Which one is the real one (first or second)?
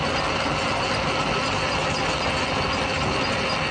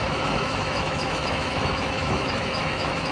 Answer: first